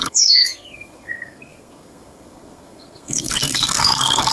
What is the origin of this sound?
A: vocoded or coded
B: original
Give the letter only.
A